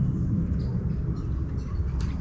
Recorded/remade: recorded